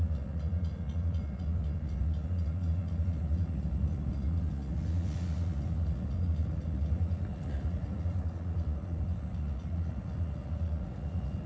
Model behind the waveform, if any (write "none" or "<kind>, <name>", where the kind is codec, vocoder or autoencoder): vocoder, Vocos